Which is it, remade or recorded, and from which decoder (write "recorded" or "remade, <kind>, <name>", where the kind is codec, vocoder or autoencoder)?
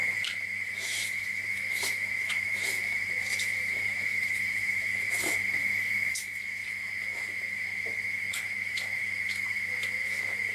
remade, autoencoder, DAC-VAE